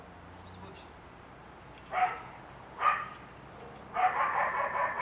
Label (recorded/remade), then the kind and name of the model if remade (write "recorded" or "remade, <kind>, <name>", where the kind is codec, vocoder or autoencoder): recorded